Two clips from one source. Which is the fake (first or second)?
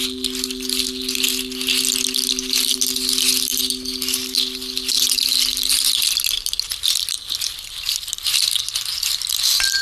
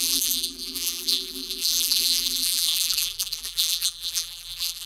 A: second